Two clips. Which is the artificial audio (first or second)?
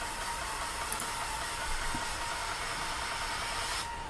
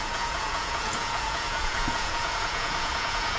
second